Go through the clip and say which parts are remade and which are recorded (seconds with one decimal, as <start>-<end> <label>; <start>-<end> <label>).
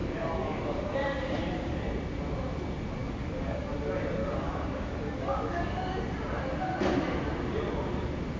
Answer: 0.0-1.8 remade; 1.8-3.0 recorded; 3.0-3.7 remade; 3.7-4.2 recorded; 4.2-6.0 remade; 6.0-8.4 recorded